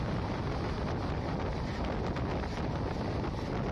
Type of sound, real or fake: real